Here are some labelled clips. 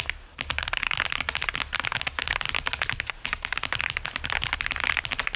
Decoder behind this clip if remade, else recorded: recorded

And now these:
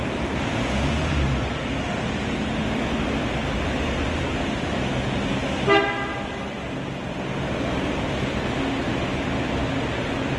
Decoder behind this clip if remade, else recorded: recorded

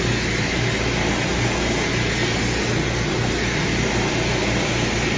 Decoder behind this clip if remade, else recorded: recorded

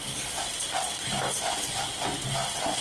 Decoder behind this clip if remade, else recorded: recorded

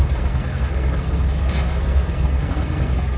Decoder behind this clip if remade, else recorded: remade, codec, SNAC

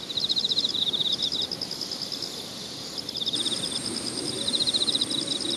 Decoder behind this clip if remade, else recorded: recorded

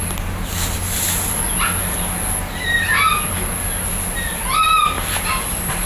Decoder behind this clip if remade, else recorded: recorded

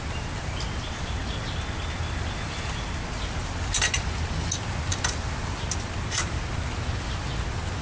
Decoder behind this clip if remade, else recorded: recorded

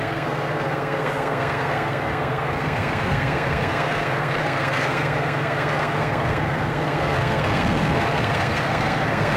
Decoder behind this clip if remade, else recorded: remade, codec, SNAC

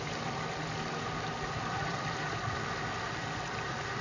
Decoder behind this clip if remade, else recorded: recorded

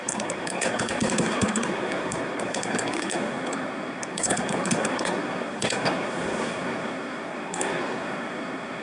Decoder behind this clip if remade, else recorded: remade, codec, SNAC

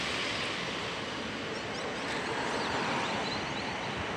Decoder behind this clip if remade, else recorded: recorded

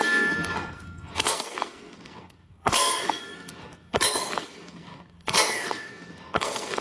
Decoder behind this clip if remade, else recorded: remade, codec, SNAC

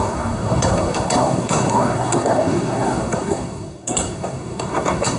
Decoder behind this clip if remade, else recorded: remade, codec, SNAC